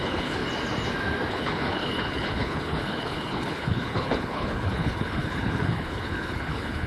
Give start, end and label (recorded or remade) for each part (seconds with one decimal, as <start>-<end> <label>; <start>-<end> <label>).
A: 0.0-0.4 remade; 0.4-1.3 recorded; 1.3-6.9 remade